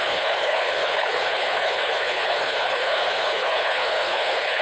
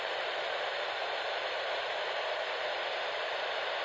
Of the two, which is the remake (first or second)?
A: first